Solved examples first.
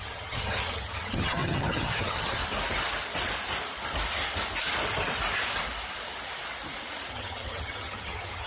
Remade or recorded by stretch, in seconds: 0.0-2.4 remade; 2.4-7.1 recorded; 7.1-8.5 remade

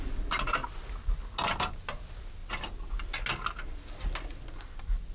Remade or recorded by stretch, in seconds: 0.0-5.1 recorded

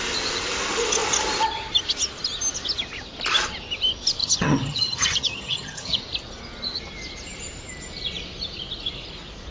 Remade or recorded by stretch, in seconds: 0.0-4.2 recorded; 4.2-6.0 remade; 6.0-9.5 recorded

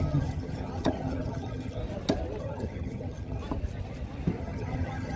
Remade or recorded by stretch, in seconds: 0.0-1.8 remade; 1.8-2.4 recorded; 2.4-3.4 remade; 3.4-4.4 recorded; 4.4-5.2 remade

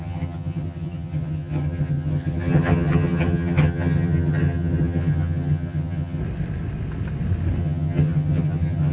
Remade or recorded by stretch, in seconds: 0.0-6.2 remade; 6.2-7.6 recorded; 7.6-8.9 remade